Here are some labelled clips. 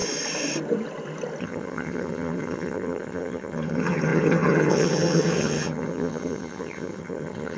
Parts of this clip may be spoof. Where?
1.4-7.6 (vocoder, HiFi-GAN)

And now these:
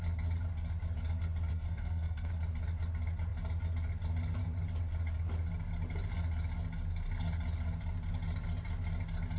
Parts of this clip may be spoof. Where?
1.5-2.3 (codec, SNAC)

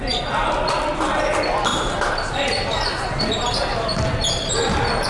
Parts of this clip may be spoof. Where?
1.7-5.1 (vocoder, BigVGAN v2)

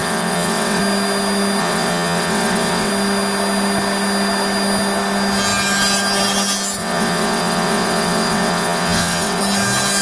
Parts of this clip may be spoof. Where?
0.0-0.8 (vocoder, WaveNeXt); 1.6-2.9; 6.8-9.4

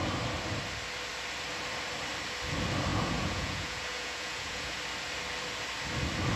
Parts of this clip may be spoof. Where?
2.9-4.8 (vocoder, Vocos)